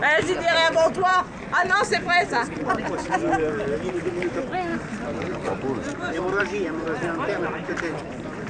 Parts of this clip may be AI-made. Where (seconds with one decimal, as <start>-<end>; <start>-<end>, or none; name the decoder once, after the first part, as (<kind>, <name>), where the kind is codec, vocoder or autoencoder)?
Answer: none